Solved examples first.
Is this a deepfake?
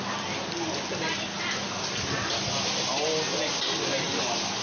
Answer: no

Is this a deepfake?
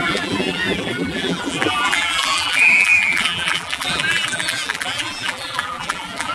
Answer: yes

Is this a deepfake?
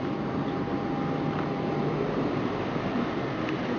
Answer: no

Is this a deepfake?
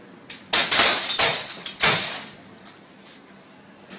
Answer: no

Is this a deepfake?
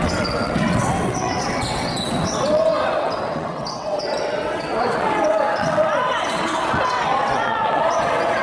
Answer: yes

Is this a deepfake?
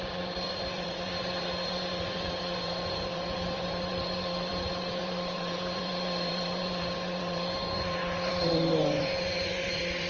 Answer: yes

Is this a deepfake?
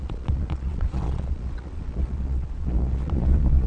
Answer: yes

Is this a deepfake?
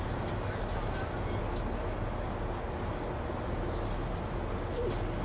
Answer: no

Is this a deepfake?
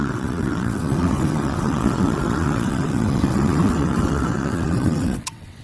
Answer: yes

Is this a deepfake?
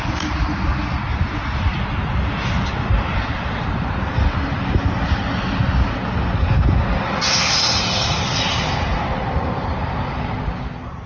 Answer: no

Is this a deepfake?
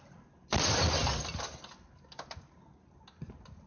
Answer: no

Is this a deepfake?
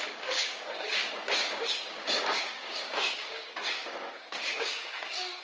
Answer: yes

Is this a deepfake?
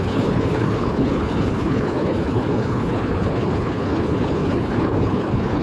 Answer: yes